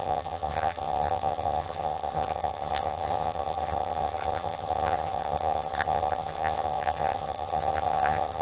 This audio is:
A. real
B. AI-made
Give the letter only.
B